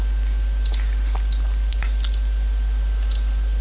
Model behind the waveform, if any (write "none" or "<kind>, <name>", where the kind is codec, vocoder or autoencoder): none